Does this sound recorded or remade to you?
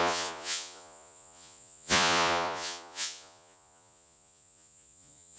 remade